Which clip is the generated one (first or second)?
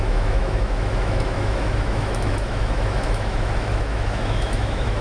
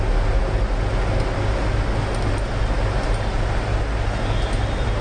first